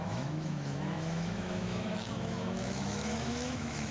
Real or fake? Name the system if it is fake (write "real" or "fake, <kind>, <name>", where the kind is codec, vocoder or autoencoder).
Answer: fake, autoencoder, DAC-VAE